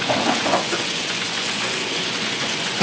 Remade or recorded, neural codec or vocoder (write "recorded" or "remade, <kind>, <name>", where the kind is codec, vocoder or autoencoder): remade, vocoder, Vocos